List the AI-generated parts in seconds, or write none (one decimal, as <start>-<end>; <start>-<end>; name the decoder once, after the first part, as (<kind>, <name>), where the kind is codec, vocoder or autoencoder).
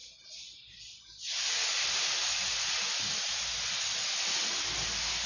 none